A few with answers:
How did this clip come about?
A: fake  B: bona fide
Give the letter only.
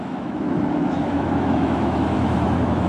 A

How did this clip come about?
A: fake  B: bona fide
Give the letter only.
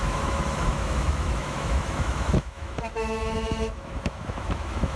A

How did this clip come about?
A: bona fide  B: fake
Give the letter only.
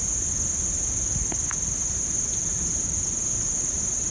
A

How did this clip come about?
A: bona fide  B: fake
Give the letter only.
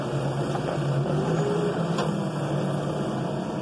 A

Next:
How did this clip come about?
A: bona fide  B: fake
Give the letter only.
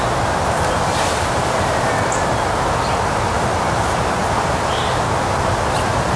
A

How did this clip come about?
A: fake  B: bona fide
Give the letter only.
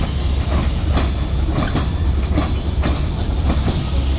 B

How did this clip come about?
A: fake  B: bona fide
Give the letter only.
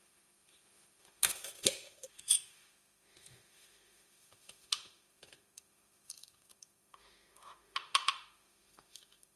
A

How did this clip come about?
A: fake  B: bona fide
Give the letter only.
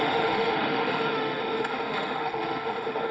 A